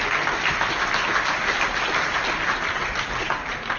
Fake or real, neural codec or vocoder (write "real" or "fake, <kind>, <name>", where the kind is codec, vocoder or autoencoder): real